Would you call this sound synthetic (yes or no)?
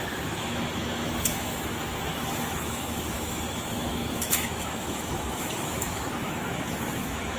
yes